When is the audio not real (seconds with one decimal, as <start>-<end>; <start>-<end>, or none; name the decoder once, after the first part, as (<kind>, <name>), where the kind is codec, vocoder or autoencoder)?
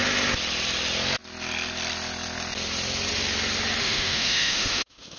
3.8-5.2 (autoencoder, DAC-VAE)